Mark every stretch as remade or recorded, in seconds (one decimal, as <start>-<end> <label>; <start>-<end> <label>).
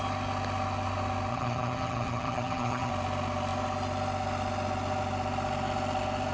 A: 0.0-1.3 recorded; 1.3-2.9 remade; 2.9-6.3 recorded